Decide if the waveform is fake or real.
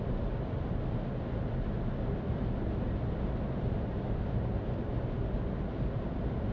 real